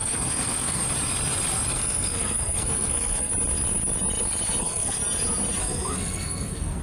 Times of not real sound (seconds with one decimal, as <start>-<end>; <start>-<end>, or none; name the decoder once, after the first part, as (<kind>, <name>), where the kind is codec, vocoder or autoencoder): 0.0-0.8 (codec, SNAC); 1.7-3.3; 4.6-5.0; 5.6-6.8